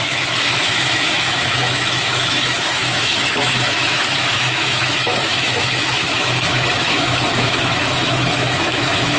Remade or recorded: remade